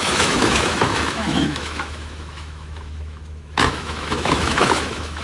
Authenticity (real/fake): fake